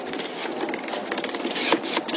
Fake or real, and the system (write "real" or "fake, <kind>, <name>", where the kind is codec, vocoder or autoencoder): real